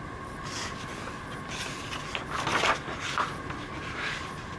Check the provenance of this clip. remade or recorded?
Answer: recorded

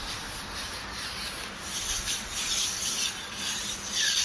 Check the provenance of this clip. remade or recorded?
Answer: recorded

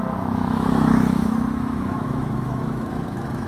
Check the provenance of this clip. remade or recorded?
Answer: remade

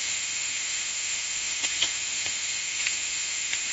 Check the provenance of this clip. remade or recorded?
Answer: remade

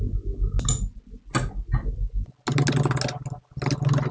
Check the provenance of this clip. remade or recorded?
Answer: recorded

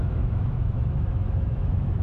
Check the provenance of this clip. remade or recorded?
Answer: remade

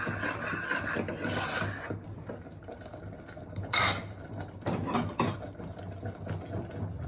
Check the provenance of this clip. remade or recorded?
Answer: recorded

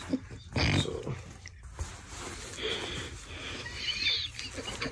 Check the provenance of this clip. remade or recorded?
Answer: recorded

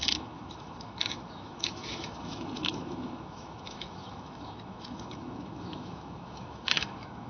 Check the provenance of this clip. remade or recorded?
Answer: remade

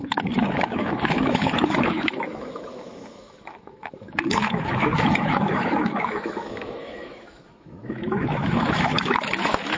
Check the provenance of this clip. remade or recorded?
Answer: remade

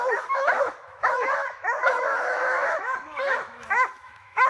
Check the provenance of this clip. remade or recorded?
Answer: remade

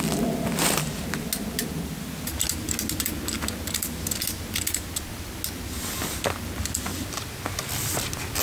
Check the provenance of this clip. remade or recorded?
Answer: recorded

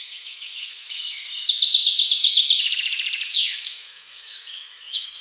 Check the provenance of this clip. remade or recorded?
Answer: remade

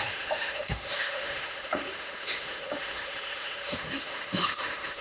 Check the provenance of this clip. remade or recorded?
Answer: remade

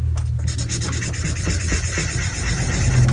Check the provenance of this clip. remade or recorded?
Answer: recorded